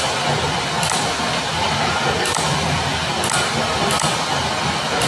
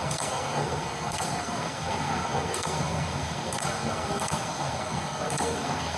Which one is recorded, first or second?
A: first